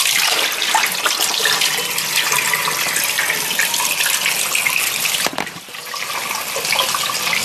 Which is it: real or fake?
real